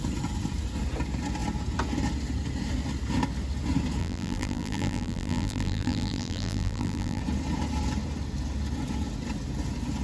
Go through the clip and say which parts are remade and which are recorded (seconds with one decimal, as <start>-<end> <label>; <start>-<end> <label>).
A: 0.0-4.0 recorded; 4.0-7.2 remade; 7.2-10.0 recorded